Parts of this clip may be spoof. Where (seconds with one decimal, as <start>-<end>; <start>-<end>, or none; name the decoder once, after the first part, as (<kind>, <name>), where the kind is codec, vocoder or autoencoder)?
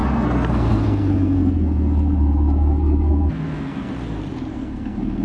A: 0.0-3.9 (codec, SNAC); 4.5-5.2